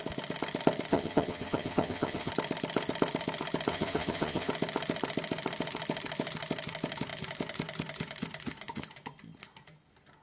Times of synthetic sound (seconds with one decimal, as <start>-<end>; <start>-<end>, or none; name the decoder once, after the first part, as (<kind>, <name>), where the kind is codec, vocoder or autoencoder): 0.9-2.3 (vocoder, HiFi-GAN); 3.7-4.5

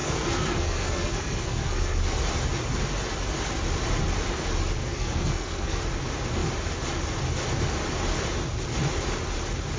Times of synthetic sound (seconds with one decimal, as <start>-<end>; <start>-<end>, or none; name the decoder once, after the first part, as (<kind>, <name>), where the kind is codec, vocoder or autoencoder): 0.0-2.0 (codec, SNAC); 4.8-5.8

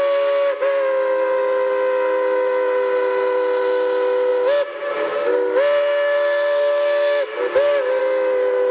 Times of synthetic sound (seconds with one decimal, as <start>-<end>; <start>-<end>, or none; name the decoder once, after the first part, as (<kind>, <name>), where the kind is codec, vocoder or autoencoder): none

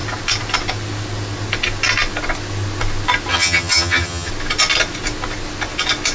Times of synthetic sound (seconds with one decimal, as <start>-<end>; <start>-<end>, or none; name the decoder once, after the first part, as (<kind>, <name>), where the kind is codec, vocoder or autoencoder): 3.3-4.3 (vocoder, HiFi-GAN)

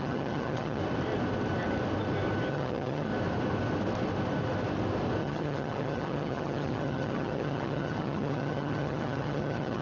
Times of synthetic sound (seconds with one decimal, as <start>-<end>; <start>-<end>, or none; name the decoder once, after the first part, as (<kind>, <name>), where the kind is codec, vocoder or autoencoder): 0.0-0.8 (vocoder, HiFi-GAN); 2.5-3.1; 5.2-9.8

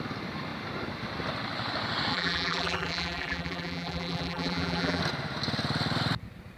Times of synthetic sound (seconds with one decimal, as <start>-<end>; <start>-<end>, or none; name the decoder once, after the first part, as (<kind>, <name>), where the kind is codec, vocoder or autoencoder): 2.1-5.0 (vocoder, BigVGAN v2)

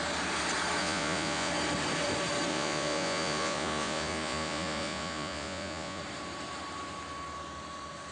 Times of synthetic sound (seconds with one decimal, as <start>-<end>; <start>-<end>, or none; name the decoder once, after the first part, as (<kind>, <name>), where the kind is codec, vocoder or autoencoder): 0.8-1.5 (vocoder, Vocos); 2.5-6.0